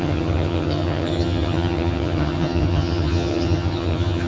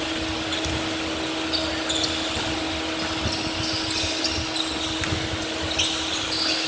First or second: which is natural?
second